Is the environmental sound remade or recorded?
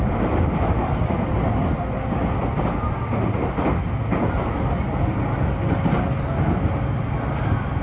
recorded